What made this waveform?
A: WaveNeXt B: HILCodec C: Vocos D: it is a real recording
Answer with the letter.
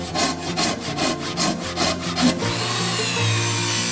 D